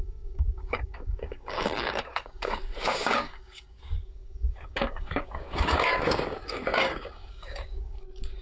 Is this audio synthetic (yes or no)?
yes